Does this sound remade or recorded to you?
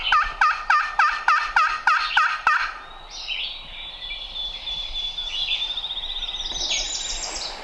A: recorded